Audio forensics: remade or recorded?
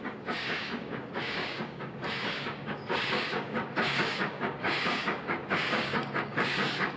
remade